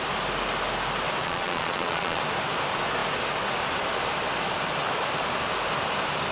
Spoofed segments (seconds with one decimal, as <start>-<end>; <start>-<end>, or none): 1.2-2.2